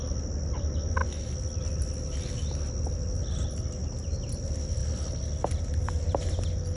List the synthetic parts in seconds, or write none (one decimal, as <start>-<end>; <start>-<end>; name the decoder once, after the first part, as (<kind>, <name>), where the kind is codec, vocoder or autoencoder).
none